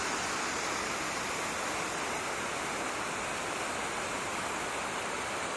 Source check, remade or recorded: recorded